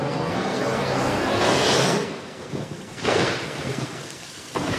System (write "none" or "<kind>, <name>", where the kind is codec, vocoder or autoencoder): codec, SNAC